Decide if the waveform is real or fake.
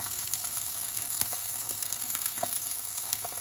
fake